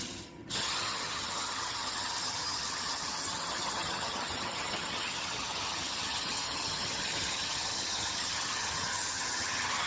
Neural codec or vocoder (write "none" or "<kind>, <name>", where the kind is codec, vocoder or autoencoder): vocoder, HiFi-GAN